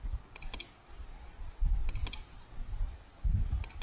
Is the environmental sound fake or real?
real